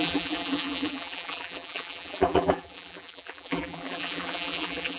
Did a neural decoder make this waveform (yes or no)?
yes